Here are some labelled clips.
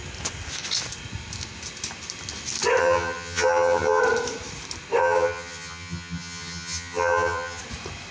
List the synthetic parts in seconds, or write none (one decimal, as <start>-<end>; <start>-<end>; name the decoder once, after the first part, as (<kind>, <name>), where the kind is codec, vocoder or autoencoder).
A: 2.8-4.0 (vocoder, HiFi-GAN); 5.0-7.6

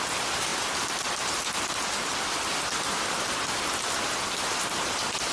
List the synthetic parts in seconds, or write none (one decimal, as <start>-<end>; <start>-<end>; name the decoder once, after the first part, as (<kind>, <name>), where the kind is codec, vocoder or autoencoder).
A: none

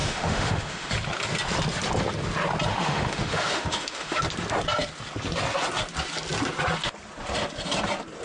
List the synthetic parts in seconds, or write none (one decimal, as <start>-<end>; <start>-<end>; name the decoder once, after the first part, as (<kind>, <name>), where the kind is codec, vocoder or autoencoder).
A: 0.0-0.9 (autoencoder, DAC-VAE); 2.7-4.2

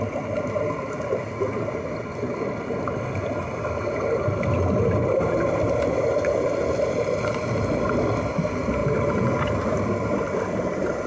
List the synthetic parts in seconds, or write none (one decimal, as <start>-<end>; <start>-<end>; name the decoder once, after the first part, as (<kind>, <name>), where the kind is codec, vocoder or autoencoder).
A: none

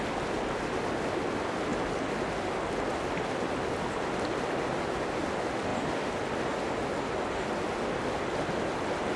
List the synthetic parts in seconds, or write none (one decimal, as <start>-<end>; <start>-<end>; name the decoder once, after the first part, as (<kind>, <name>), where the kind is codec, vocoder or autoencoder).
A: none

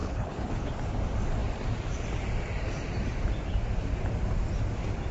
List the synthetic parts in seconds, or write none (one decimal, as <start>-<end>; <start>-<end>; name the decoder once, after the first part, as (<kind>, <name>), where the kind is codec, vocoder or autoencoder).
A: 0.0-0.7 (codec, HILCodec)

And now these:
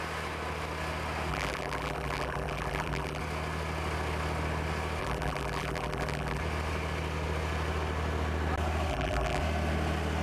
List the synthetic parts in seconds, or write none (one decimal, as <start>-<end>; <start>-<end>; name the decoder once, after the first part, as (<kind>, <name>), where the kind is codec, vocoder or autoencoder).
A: 1.3-3.2 (vocoder, BigVGAN v2); 5.0-6.4; 8.9-9.4

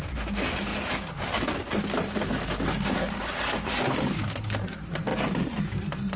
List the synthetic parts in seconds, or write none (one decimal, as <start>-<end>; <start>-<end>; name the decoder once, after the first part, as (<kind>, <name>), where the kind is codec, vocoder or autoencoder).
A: 0.0-0.7 (vocoder, BigVGAN v2); 4.4-6.2